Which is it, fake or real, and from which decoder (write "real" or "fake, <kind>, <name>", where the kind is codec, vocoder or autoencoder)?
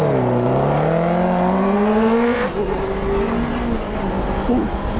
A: real